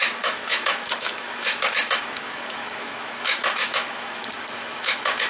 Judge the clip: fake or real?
fake